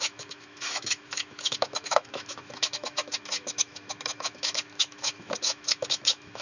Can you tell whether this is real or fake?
fake